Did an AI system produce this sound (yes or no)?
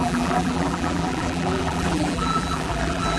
yes